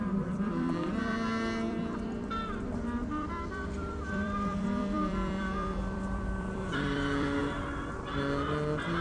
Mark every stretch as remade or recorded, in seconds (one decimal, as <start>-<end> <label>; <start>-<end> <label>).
0.0-7.4 remade; 7.4-9.0 recorded